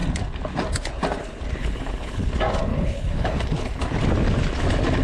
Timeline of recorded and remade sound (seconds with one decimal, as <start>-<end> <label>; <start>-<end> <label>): 0.0-1.6 recorded; 1.6-2.3 remade; 2.3-2.7 recorded; 2.7-3.8 remade; 3.8-5.0 recorded